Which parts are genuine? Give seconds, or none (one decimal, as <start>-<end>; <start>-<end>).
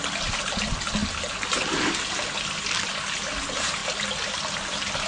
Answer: 0.0-5.1